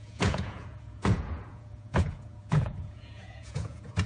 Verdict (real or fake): fake